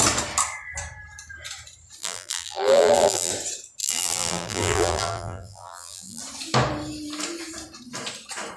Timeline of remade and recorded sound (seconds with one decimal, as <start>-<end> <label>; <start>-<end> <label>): 0.0-2.0 recorded; 2.0-3.3 remade; 3.3-3.8 recorded; 3.8-6.2 remade; 6.2-8.6 recorded